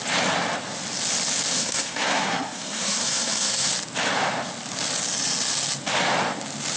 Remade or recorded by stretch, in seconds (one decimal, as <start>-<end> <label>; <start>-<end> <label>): 0.0-1.5 recorded; 1.5-3.7 remade; 3.7-6.8 recorded